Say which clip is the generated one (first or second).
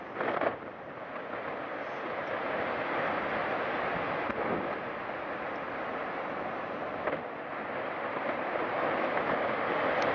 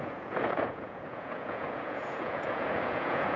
second